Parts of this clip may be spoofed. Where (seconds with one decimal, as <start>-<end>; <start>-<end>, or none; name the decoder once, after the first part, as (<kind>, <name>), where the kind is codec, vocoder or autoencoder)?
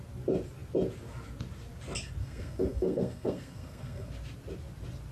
2.2-4.1 (codec, SNAC)